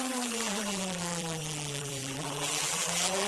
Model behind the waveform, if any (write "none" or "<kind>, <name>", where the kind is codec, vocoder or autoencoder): vocoder, BigVGAN v2